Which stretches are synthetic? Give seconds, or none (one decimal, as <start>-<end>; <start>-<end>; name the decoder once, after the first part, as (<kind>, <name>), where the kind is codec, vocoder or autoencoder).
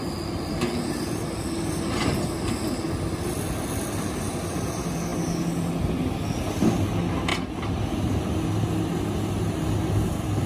none